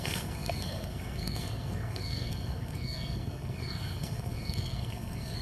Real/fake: fake